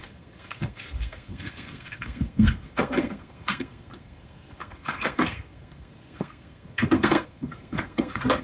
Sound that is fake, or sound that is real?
fake